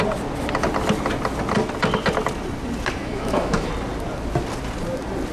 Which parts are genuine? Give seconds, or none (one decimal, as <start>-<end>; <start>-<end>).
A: 0.0-3.0; 3.7-5.3